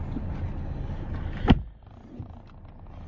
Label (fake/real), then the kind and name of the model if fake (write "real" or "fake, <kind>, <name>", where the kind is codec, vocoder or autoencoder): real